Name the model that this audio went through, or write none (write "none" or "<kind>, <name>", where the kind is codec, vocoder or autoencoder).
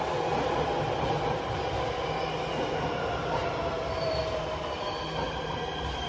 none